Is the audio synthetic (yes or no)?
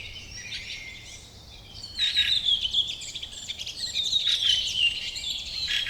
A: yes